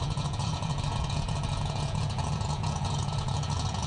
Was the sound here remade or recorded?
remade